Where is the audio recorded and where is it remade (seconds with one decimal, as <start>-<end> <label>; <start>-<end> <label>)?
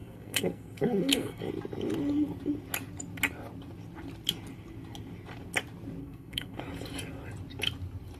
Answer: 0.0-1.4 remade; 1.4-6.0 recorded; 6.0-6.6 remade; 6.6-8.2 recorded